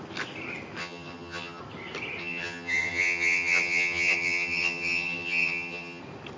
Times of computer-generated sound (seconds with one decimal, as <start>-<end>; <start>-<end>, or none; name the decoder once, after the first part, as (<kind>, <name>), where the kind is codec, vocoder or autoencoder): 0.8-1.6 (vocoder, HiFi-GAN); 2.2-6.0